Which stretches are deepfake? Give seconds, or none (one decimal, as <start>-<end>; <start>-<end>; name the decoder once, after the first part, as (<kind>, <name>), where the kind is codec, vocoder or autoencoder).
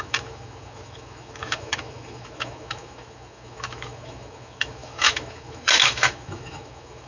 0.0-7.1 (autoencoder, DAC-VAE)